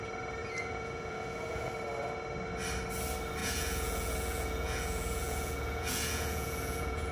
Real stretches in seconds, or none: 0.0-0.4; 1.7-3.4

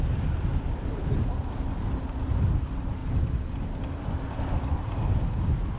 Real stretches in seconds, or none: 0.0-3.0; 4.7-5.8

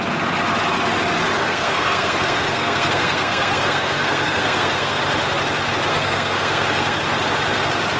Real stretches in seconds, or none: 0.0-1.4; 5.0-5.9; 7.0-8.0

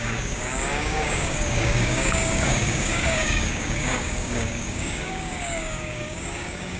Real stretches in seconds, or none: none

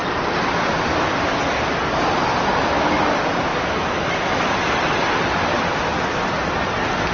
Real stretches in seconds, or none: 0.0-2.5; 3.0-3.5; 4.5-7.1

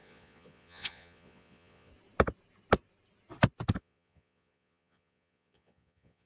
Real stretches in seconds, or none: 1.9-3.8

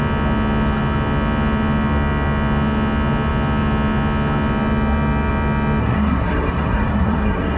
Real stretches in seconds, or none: 0.0-5.8